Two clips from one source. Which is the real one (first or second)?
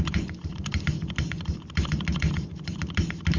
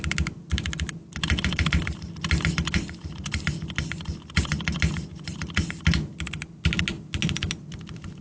second